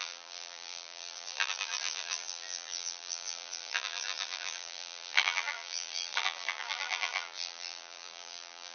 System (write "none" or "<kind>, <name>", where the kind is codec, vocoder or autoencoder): vocoder, BigVGAN v2